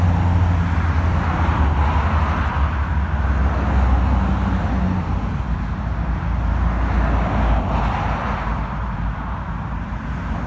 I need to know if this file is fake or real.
real